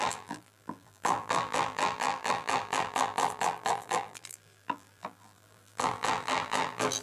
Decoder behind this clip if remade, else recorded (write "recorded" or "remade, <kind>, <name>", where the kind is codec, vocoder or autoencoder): remade, vocoder, BigVGAN v2